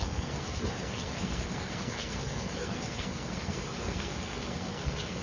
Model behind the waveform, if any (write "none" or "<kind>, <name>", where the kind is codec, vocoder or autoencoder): codec, SNAC